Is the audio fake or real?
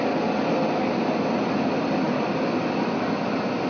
real